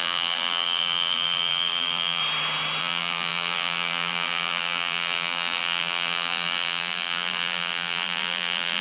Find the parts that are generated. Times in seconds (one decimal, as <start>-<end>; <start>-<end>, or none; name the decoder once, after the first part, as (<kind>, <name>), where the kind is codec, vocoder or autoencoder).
0.0-2.2 (vocoder, BigVGAN v2); 2.8-8.8